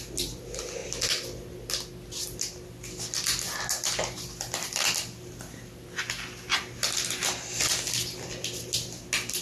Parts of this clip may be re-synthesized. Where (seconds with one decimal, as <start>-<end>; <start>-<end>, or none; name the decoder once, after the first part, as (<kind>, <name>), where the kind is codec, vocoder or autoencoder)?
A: none